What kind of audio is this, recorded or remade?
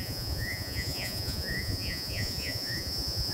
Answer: remade